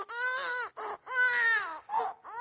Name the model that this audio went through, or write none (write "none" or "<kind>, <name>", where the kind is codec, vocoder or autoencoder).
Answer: none